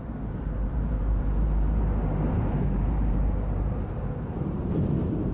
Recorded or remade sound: remade